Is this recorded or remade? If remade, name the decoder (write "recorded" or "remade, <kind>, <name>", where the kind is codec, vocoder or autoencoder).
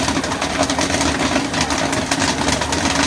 recorded